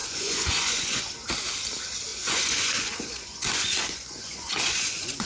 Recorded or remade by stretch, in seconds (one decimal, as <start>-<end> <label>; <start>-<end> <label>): 0.0-1.1 remade; 1.1-2.1 recorded; 2.1-5.3 remade